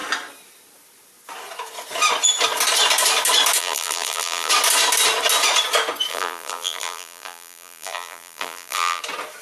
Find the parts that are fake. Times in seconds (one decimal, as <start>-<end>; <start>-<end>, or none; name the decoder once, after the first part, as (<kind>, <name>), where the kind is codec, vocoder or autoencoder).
3.6-4.5 (vocoder, BigVGAN v2); 6.1-9.0